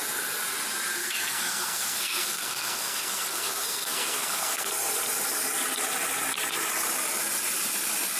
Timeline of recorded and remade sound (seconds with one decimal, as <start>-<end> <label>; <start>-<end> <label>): 0.0-1.0 recorded; 1.0-4.7 remade; 4.7-8.2 recorded